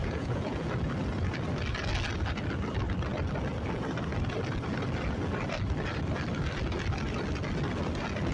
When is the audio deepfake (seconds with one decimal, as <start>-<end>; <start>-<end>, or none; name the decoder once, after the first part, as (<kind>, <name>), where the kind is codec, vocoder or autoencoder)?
0.0-0.7 (vocoder, Vocos)

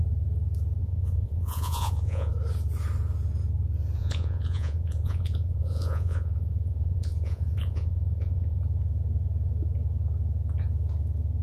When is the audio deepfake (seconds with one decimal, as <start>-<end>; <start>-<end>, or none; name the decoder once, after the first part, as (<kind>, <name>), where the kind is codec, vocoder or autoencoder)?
0.8-2.3 (vocoder, Vocos); 4.0-8.6

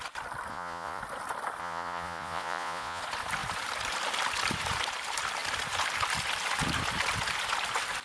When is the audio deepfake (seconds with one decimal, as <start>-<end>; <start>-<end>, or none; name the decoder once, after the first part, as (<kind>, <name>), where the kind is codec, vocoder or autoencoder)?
0.5-1.0 (vocoder, Vocos); 1.6-3.0

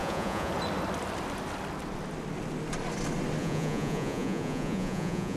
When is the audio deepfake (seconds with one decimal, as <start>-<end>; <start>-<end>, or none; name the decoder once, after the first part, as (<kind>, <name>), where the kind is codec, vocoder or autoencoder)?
0.0-0.5 (vocoder, Vocos); 3.4-5.4